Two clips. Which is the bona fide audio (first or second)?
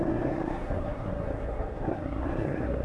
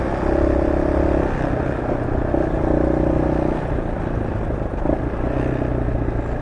second